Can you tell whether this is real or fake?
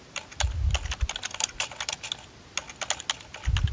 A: real